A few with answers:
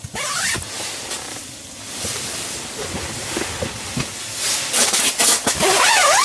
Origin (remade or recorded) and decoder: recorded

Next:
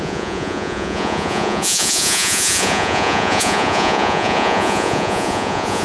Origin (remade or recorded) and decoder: remade, vocoder, Vocos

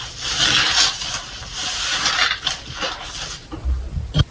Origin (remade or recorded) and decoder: recorded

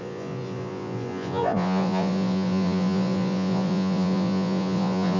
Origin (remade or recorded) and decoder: remade, vocoder, Vocos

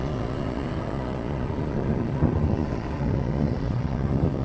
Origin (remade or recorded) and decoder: remade, vocoder, Vocos